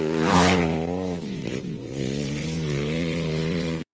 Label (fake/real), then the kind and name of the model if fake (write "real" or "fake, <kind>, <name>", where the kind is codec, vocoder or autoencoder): fake, vocoder, Vocos